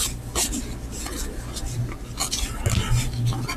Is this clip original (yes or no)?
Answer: yes